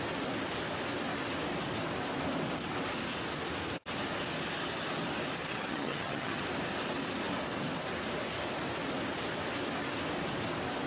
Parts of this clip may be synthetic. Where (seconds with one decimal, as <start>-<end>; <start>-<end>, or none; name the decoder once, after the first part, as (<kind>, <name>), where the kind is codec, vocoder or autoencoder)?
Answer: 5.5-6.4 (vocoder, HiFi-GAN)